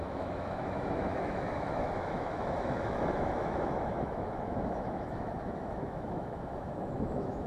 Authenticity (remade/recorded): remade